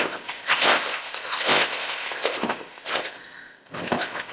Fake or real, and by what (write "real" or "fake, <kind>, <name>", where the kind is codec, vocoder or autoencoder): fake, codec, ZipCodec